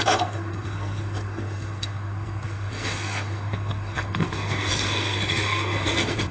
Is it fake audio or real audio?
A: fake